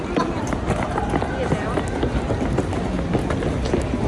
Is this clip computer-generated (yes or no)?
no